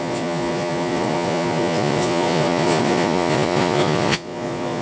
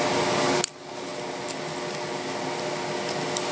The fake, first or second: first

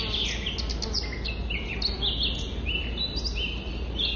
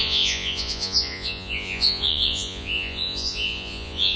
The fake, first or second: second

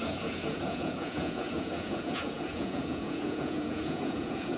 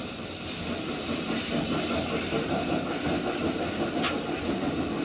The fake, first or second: first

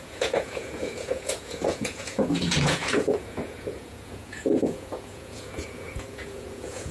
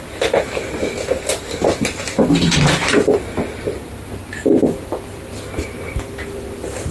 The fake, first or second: first